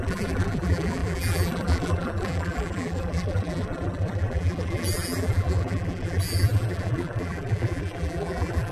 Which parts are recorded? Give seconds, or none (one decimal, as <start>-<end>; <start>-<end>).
none